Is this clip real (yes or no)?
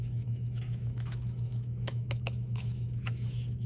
no